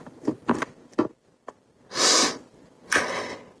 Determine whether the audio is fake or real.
real